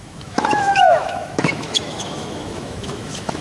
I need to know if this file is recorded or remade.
remade